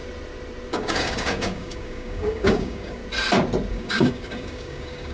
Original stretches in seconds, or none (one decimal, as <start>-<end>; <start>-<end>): 0.0-0.7; 3.0-3.7